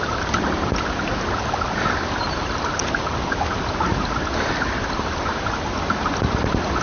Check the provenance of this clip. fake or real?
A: real